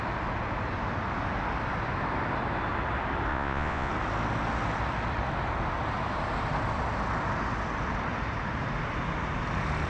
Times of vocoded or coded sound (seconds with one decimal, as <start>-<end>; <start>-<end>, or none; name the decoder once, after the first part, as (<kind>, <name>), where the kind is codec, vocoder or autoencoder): 3.3-3.9 (vocoder, Vocos)